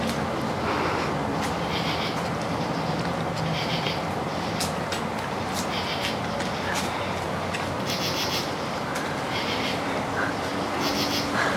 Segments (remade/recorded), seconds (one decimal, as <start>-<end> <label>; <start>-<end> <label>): 0.0-11.6 recorded